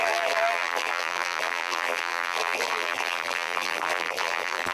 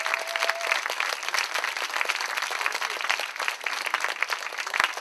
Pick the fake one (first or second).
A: first